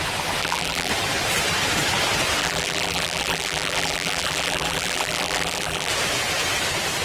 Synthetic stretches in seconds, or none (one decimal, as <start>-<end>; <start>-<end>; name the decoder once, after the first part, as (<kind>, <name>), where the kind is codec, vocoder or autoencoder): 0.4-0.9 (vocoder, BigVGAN v2); 2.4-5.9